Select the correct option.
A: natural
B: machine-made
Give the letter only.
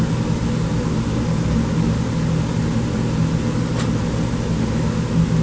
A